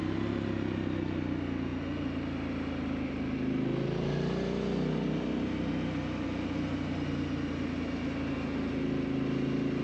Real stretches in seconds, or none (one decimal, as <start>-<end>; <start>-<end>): 0.0-9.8